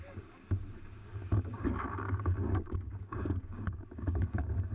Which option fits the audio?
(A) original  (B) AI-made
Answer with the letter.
B